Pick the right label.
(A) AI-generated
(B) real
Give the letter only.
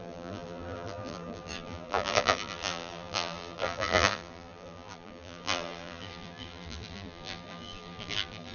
A